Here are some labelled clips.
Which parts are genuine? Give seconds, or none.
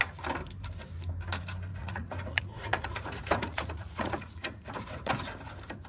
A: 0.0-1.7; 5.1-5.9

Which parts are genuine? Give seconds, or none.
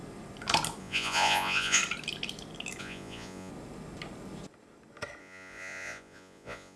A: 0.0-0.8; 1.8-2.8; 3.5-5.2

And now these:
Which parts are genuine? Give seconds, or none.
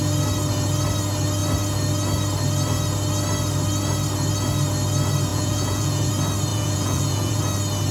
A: 0.0-5.3; 6.1-6.5; 7.4-7.9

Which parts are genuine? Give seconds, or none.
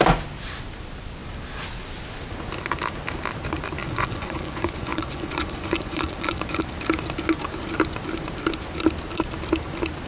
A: 0.0-3.8; 6.6-10.1